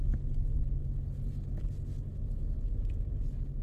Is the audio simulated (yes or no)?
no